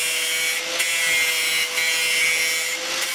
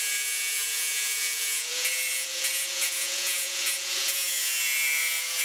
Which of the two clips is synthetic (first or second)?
second